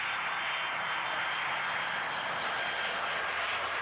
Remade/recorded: recorded